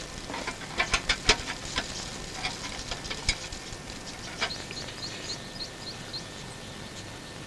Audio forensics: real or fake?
real